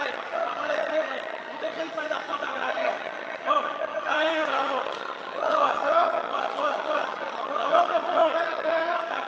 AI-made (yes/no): yes